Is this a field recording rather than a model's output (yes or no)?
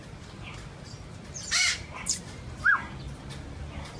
yes